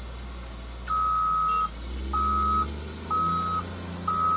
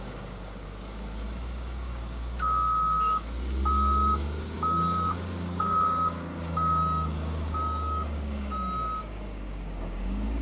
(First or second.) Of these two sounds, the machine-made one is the second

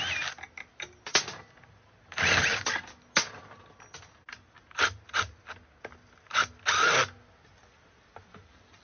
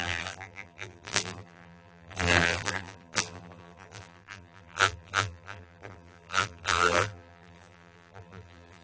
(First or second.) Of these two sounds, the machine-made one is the second